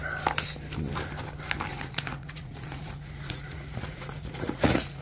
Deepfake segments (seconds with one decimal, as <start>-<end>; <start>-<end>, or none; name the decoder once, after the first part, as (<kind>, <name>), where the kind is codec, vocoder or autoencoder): 1.7-5.0 (vocoder, Vocos)